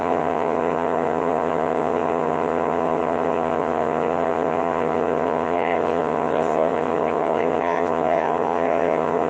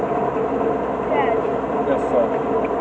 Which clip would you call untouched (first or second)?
second